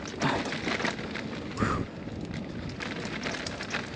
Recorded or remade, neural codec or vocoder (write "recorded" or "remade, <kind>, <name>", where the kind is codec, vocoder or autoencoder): recorded